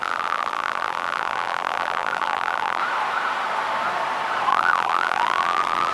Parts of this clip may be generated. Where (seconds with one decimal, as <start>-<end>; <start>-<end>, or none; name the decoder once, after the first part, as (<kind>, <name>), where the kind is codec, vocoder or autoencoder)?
0.0-2.8 (vocoder, BigVGAN v2); 4.5-5.9